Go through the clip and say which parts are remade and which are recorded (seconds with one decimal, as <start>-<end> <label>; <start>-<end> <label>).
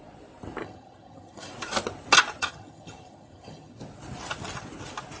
0.0-0.6 recorded; 0.6-1.5 remade; 1.5-2.4 recorded; 2.4-3.8 remade; 3.8-5.2 recorded